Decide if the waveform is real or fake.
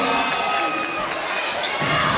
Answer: real